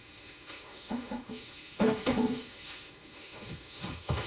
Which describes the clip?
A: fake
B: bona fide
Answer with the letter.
A